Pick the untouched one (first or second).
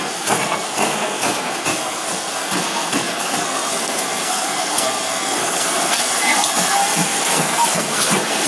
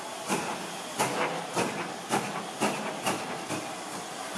second